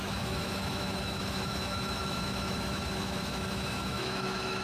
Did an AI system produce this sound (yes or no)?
yes